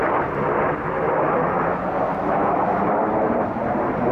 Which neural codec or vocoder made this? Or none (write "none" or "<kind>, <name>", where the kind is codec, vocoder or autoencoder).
none